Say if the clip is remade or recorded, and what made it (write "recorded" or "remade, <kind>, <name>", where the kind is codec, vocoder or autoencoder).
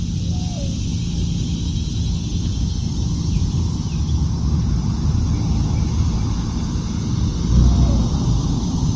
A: recorded